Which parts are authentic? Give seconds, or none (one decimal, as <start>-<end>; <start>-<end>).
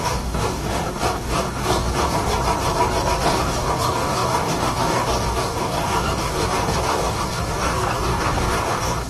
2.4-3.2